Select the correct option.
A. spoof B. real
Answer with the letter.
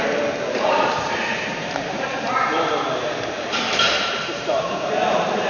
A